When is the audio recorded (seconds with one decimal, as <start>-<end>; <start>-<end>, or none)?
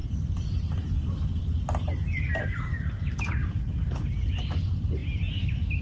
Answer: 0.0-5.8